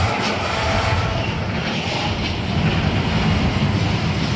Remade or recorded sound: recorded